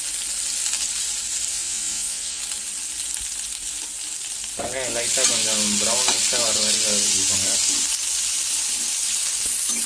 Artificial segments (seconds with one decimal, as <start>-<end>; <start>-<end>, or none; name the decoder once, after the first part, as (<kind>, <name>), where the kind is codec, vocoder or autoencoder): 1.5-2.4 (vocoder, Vocos)